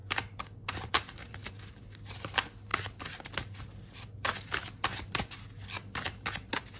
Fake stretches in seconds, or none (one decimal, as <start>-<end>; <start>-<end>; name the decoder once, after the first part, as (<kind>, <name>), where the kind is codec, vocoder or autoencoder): none

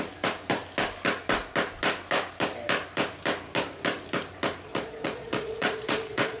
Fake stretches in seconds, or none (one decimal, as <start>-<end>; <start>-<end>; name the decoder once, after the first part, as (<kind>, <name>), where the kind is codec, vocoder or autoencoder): 4.7-6.4 (vocoder, Vocos)

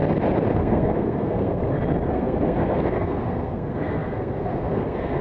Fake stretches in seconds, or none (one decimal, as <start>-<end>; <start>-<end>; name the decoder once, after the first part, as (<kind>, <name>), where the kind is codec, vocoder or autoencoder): 0.5-1.6 (codec, SNAC); 2.1-5.2

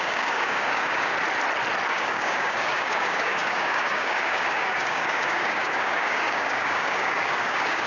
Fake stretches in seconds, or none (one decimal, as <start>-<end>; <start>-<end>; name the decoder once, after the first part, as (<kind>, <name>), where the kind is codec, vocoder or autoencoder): 0.0-1.1 (codec, DAC); 1.9-7.9

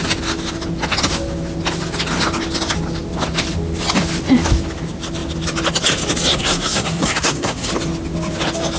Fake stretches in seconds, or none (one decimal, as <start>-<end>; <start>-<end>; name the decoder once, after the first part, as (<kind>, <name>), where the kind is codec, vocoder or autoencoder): 6.3-7.7 (codec, SNAC)

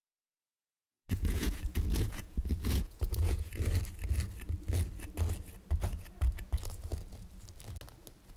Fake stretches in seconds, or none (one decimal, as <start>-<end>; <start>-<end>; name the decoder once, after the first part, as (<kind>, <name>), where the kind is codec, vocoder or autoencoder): 0.4-3.6 (vocoder, Vocos)